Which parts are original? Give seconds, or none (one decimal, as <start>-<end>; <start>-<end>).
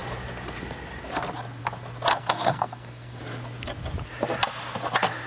0.0-2.1; 3.2-5.3